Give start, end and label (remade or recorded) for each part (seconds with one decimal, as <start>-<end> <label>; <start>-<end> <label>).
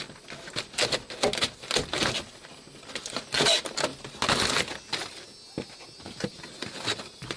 0.0-7.4 recorded